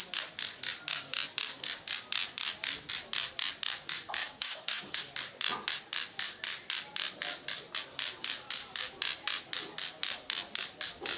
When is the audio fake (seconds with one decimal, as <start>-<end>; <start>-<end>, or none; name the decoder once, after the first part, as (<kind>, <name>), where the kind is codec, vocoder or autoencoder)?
4.2-5.0 (autoencoder, DAC-VAE)